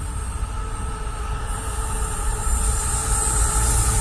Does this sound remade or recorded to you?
recorded